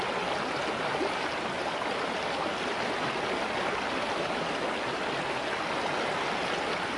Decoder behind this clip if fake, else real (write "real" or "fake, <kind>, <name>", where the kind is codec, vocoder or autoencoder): real